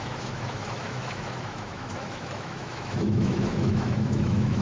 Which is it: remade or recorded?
remade